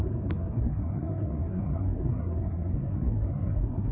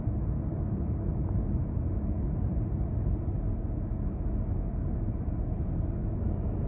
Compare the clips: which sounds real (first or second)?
second